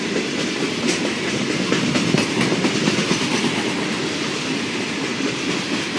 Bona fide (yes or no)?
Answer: yes